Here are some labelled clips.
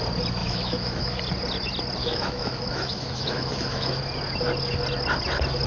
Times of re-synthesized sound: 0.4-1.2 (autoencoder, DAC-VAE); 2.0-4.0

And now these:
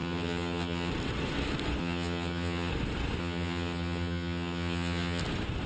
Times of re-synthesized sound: 0.0-0.9 (vocoder, HiFi-GAN); 1.8-2.7; 3.2-5.2

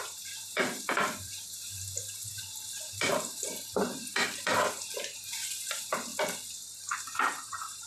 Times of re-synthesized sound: 0.0-6.1 (vocoder, BigVGAN v2); 7.0-7.9

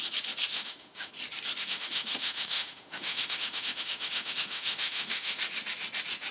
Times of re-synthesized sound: 0.5-1.1 (autoencoder, DAC-VAE); 1.6-5.4

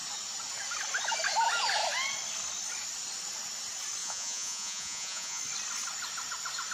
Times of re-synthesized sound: 4.0-5.4 (vocoder, Vocos)

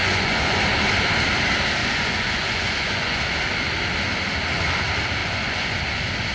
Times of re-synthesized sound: 0.0-0.6 (vocoder, Vocos); 1.8-3.2; 5.2-5.8